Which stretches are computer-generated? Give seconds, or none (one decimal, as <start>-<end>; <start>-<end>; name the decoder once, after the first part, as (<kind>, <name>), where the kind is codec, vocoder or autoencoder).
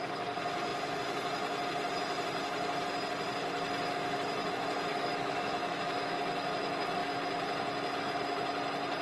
4.9-5.8 (autoencoder, DAC-VAE)